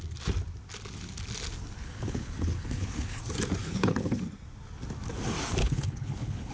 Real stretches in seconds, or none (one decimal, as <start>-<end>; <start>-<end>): 0.0-1.8; 3.2-3.6; 4.2-5.6